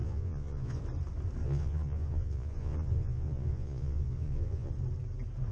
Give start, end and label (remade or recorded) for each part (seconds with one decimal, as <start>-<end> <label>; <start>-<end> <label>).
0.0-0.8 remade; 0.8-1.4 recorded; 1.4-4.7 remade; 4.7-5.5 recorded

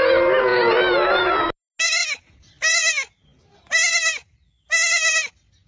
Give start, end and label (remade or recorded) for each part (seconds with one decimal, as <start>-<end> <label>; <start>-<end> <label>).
0.0-5.7 recorded

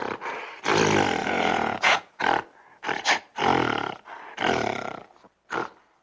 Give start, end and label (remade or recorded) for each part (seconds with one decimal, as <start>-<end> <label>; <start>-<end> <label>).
0.0-1.2 recorded; 1.2-2.2 remade; 2.2-6.0 recorded